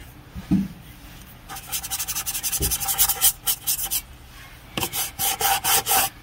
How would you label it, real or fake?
real